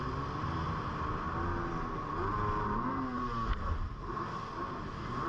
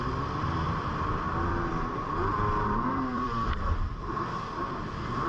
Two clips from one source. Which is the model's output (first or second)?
second